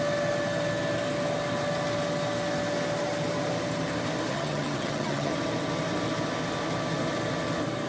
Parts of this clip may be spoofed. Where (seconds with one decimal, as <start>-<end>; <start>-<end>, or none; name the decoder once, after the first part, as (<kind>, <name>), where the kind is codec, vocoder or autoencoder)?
4.3-5.3 (vocoder, HiFi-GAN)

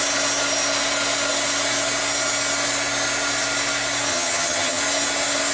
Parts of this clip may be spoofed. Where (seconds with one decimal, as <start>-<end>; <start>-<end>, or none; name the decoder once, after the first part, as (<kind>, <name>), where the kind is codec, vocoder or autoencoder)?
4.1-4.8 (vocoder, HiFi-GAN)

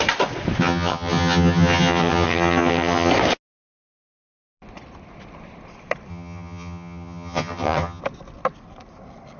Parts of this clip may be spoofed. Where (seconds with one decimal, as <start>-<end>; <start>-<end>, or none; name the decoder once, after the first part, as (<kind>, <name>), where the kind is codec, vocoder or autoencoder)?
0.6-3.1 (vocoder, HiFi-GAN); 6.1-8.0

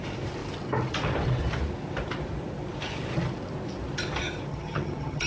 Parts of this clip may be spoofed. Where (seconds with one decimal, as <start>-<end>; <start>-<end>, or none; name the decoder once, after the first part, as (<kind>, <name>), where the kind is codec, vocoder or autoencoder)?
4.5-5.3 (vocoder, HiFi-GAN)

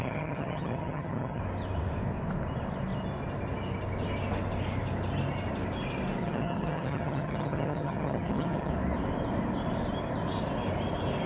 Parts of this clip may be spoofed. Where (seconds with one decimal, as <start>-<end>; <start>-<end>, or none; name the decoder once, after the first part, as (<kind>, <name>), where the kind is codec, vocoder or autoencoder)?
0.0-1.4 (vocoder, HiFi-GAN); 6.2-8.7